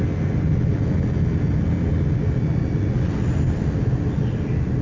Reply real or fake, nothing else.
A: real